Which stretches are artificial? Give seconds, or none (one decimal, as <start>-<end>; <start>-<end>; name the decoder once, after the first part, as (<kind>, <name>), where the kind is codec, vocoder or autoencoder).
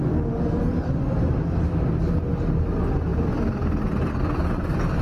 none